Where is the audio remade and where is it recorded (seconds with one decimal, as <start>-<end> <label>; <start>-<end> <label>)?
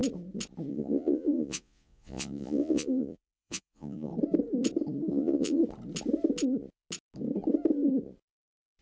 0.0-0.7 recorded; 0.7-4.1 remade; 4.1-5.1 recorded; 5.1-5.6 remade; 5.6-8.8 recorded